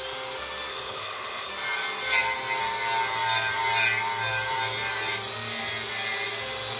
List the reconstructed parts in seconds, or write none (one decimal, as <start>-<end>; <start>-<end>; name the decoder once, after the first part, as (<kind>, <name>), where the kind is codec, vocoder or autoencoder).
0.7-1.5 (codec, HILCodec)